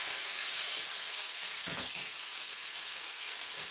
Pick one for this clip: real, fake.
fake